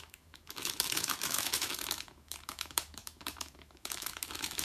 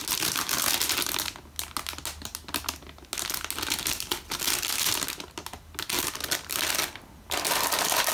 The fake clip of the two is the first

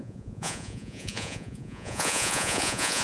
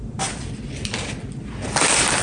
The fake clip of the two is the first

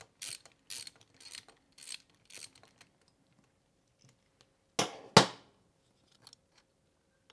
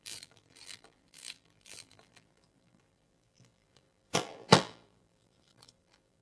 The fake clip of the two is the second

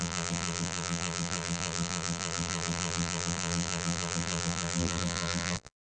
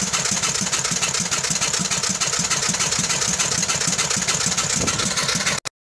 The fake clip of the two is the first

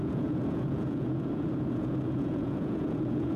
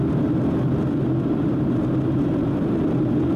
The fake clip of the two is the first